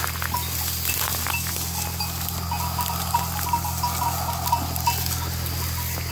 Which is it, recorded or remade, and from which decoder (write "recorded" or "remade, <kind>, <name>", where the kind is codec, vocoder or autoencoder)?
recorded